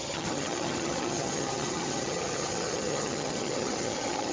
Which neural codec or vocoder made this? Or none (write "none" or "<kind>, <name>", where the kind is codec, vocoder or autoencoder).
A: vocoder, HiFi-GAN